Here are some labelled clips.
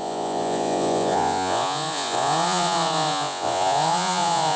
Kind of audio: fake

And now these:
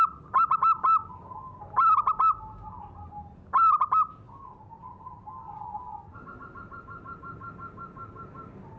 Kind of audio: real